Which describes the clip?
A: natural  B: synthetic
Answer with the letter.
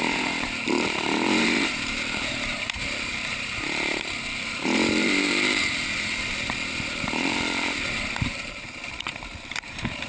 B